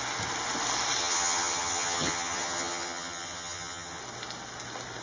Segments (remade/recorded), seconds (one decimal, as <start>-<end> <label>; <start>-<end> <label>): 0.0-1.0 recorded; 1.0-4.0 remade; 4.0-5.0 recorded